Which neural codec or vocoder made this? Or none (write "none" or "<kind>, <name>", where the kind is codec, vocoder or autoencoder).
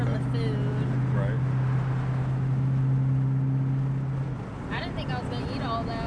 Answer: none